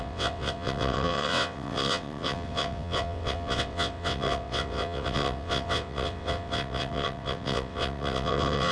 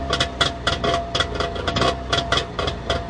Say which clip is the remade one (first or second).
first